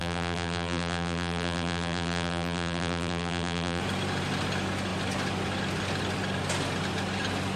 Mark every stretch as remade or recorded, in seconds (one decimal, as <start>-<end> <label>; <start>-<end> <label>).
0.0-3.8 remade; 3.8-7.6 recorded